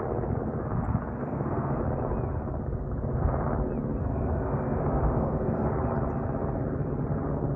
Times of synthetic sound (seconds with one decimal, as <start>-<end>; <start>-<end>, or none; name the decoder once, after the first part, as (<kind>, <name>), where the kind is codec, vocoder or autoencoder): 1.2-1.8 (codec, SNAC); 4.0-5.7